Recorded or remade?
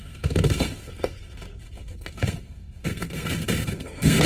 remade